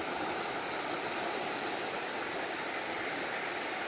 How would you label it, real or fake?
real